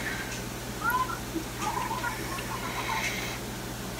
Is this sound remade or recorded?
recorded